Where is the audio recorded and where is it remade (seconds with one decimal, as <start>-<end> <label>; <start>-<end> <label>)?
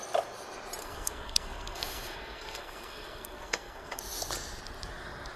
0.0-0.8 recorded; 0.8-4.0 remade; 4.0-5.4 recorded